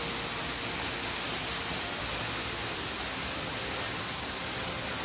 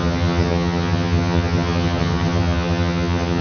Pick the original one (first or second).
first